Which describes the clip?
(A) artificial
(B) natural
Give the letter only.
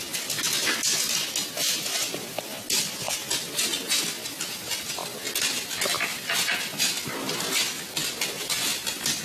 B